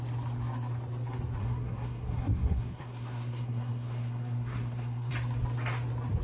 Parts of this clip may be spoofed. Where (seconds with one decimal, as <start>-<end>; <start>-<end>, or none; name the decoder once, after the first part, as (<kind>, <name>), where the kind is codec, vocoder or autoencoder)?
1.4-5.1 (codec, SNAC)